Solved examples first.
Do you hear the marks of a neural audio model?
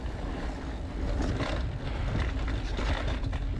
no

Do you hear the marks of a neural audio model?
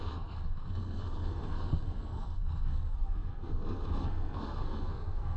yes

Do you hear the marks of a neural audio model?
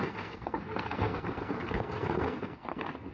yes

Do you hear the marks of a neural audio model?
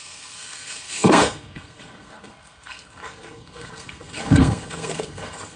yes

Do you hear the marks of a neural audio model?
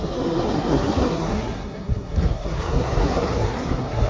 yes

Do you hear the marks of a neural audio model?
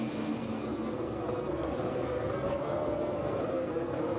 yes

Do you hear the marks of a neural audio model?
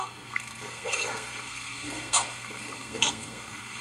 yes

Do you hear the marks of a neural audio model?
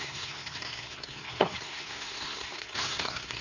yes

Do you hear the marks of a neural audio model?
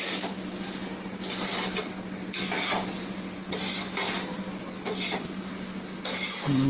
no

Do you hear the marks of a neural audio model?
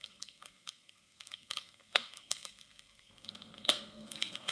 yes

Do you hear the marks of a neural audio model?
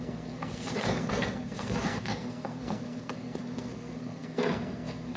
yes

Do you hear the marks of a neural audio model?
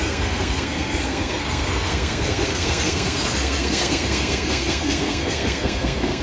yes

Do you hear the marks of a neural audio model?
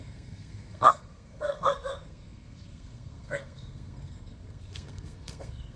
yes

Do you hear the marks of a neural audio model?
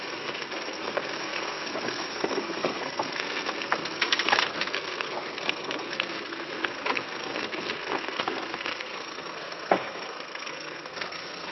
yes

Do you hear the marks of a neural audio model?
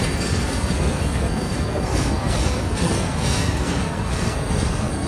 yes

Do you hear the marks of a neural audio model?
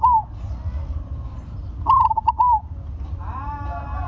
no